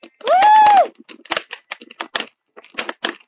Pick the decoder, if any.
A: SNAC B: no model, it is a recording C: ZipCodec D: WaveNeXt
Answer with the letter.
B